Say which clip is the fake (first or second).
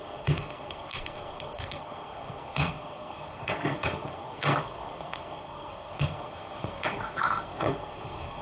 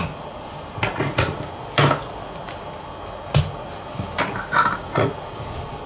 first